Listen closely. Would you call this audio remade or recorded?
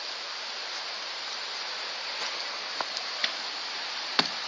remade